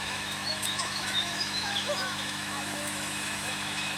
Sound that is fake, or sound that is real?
fake